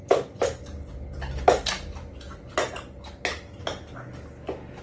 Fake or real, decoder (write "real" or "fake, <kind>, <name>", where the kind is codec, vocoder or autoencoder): real